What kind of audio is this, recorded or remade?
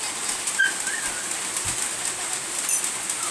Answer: recorded